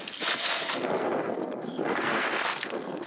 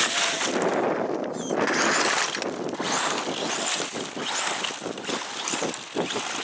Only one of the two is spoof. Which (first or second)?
first